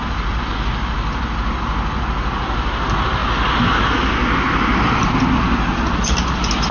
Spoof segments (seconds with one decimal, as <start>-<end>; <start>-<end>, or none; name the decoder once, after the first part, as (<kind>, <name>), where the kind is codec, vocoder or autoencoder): none